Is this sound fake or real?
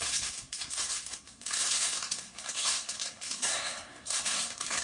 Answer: fake